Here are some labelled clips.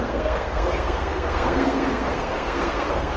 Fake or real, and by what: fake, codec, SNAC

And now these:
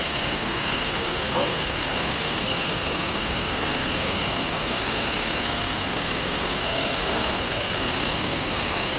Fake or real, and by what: fake, codec, SNAC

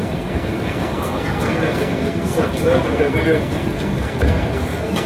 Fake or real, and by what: fake, codec, SNAC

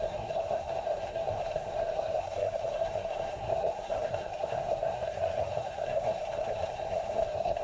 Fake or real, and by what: fake, codec, SNAC